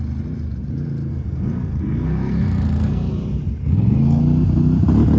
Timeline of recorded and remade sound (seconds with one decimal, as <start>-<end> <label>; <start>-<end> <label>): 0.0-1.1 recorded; 1.1-3.1 remade; 3.1-3.6 recorded; 3.6-4.2 remade; 4.2-5.2 recorded

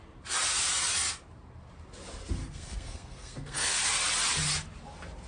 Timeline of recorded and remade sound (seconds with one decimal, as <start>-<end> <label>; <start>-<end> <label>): 0.0-2.4 recorded; 2.4-3.8 remade; 3.8-5.3 recorded

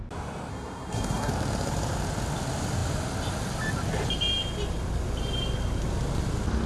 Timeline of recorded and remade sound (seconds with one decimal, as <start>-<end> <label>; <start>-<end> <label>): 0.0-0.5 recorded; 0.5-1.3 remade; 1.3-6.7 recorded

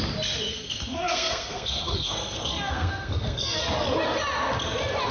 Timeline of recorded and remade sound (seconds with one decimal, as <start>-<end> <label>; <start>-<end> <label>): 0.0-0.5 recorded; 0.5-3.6 remade; 3.6-5.1 recorded

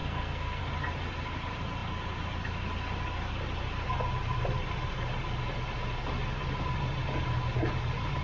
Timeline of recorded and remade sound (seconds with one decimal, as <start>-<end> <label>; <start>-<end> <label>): 0.0-0.6 remade; 0.6-8.2 recorded

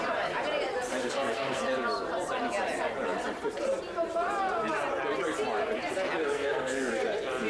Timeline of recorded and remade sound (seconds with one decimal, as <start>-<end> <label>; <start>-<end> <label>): 0.0-1.0 recorded; 1.0-1.6 remade; 1.6-6.2 recorded; 6.2-6.9 remade; 6.9-7.5 recorded

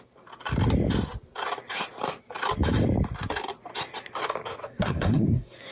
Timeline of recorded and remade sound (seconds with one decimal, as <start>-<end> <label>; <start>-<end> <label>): 0.0-4.6 recorded; 4.6-5.7 remade

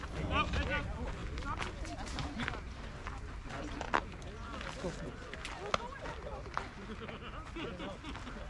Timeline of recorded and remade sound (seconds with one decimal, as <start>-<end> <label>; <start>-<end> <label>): 0.0-8.5 recorded